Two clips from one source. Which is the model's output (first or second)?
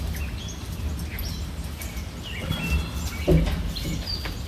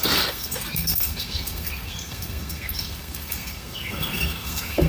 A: second